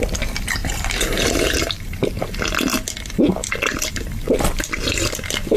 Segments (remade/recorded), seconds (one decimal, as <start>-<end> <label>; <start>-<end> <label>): 0.0-0.6 recorded; 0.6-2.3 remade; 2.3-5.6 recorded